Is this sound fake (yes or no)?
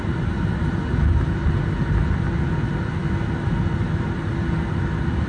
no